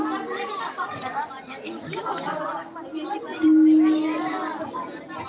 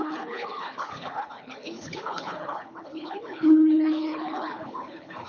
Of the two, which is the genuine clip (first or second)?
first